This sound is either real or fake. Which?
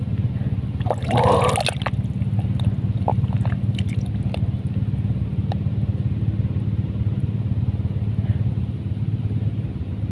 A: real